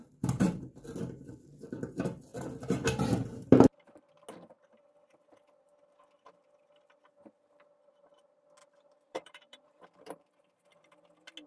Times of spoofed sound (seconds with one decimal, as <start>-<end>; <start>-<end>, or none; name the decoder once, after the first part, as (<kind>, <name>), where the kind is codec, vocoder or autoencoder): 8.6-10.3 (vocoder, BigVGAN v2)